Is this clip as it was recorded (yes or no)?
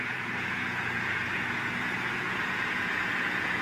no